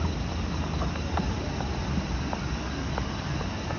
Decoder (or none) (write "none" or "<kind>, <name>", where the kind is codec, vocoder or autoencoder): none